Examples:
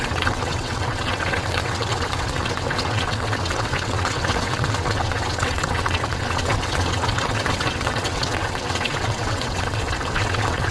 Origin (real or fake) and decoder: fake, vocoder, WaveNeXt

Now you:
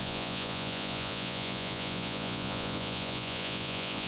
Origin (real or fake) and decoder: fake, vocoder, Vocos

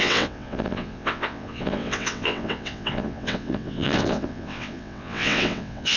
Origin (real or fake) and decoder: fake, vocoder, WaveNeXt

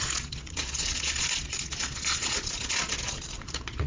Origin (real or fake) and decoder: fake, vocoder, Vocos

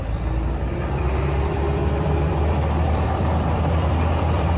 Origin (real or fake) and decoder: fake, vocoder, BigVGAN v2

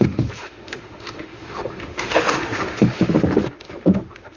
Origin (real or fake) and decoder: fake, autoencoder, DAC-VAE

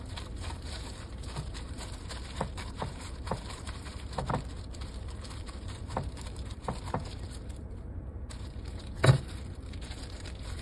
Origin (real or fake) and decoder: fake, vocoder, BigVGAN v2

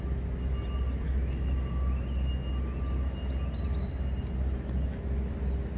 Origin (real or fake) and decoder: real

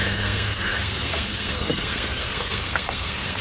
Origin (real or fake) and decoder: fake, codec, SNAC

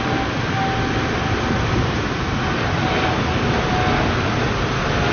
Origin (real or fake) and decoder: real